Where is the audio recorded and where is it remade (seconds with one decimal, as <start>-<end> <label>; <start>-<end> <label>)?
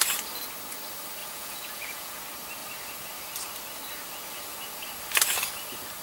0.0-1.2 recorded; 1.2-2.2 remade; 2.2-6.0 recorded